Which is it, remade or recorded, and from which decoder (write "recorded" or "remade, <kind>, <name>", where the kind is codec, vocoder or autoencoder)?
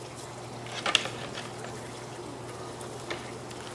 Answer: recorded